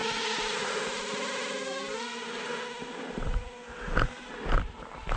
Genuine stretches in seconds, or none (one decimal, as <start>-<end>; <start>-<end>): 0.0-5.2